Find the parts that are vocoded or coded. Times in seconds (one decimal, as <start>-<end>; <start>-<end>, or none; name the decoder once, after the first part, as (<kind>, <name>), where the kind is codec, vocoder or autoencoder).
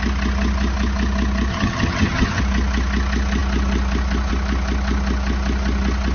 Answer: 1.5-2.4 (vocoder, HiFi-GAN)